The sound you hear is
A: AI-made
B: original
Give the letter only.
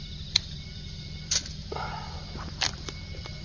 A